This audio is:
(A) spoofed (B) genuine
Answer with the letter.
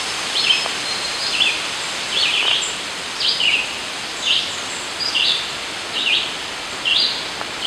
B